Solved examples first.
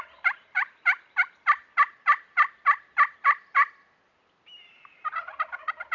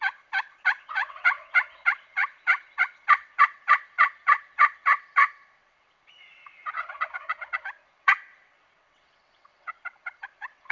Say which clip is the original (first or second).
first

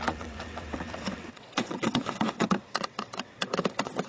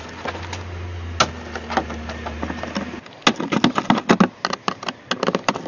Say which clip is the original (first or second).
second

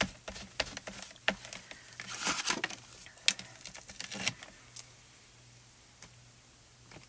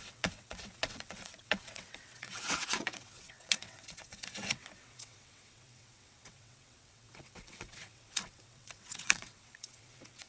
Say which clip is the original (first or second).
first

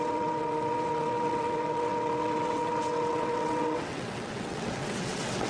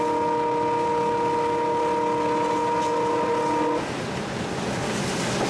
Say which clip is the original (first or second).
second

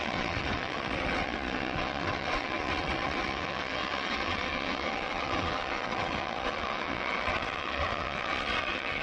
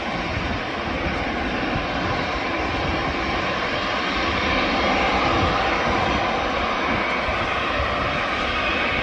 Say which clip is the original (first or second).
second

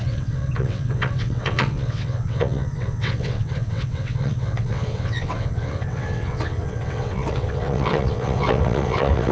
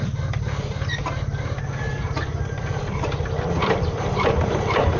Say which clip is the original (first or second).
second